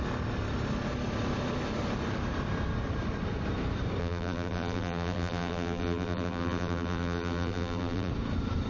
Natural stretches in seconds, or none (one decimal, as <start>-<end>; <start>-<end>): 0.0-4.0; 8.1-8.7